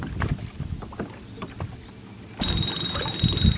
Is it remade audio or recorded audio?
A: recorded